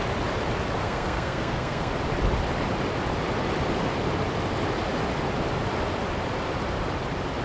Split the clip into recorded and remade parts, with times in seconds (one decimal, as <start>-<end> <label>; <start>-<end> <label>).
0.0-0.8 recorded; 0.8-1.9 remade; 1.9-7.4 recorded